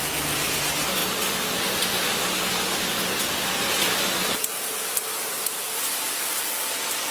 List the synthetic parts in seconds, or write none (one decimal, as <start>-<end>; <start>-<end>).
none